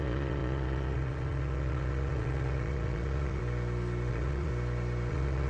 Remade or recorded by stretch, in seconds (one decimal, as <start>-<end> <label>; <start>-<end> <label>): 0.0-3.4 remade; 3.4-4.1 recorded; 4.1-4.5 remade; 4.5-5.1 recorded; 5.1-5.5 remade